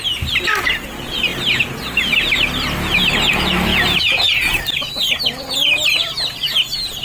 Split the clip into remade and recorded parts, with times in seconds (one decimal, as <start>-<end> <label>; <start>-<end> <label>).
0.0-7.0 recorded